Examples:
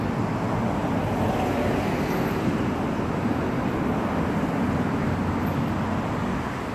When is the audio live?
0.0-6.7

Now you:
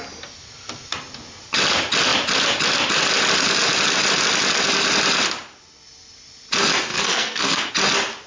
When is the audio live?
0.0-6.9; 7.7-8.3

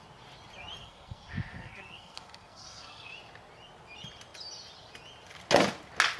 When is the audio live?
0.0-0.8; 3.1-6.2

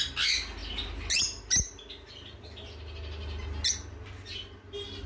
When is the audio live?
0.0-5.1

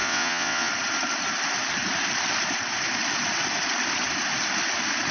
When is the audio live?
0.7-5.1

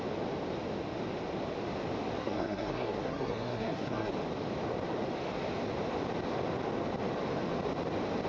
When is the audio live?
0.0-2.2; 4.1-8.3